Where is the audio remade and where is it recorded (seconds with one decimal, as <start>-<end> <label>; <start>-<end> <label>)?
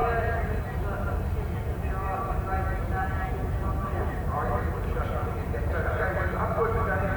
0.0-2.0 recorded; 2.0-4.5 remade; 4.5-5.2 recorded; 5.2-5.9 remade; 5.9-7.2 recorded